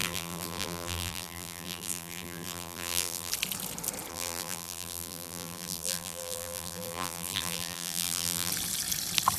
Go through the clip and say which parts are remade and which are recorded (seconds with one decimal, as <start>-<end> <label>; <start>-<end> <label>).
0.0-3.3 remade; 3.3-4.1 recorded; 4.1-8.5 remade; 8.5-9.4 recorded